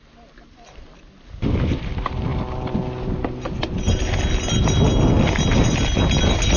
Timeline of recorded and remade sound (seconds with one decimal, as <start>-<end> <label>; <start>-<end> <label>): 0.0-6.6 recorded